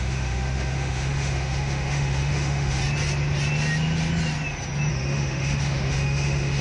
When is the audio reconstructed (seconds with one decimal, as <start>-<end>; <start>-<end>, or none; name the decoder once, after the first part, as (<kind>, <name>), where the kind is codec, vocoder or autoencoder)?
0.0-2.8 (autoencoder, DAC-VAE); 4.9-6.6